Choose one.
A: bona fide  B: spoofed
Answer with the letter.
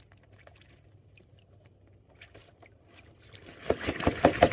A